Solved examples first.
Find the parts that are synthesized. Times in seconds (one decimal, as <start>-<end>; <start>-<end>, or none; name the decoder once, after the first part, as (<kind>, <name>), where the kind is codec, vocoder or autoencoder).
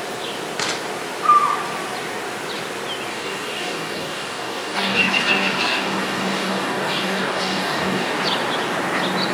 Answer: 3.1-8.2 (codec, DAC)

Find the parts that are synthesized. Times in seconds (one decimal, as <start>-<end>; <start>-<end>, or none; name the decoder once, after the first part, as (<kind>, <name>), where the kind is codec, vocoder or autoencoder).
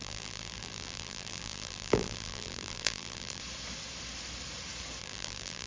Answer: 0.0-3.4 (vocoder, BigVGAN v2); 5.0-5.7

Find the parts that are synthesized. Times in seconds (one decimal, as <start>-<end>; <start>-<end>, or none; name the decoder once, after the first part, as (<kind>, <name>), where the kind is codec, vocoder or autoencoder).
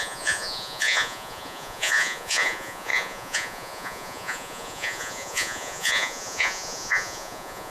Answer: 0.0-7.7 (vocoder, Vocos)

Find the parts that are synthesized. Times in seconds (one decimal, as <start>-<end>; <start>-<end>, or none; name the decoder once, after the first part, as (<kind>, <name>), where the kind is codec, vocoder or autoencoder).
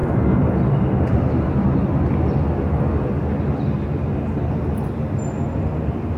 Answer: 1.0-2.1 (vocoder, BigVGAN v2); 5.8-6.2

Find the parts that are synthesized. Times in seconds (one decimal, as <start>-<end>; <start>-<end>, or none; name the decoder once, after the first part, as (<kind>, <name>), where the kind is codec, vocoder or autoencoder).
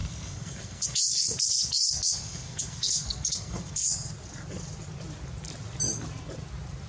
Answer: 0.0-4.1 (codec, SNAC)